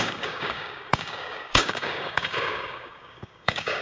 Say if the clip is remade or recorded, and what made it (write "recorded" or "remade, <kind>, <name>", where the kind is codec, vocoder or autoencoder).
remade, codec, DAC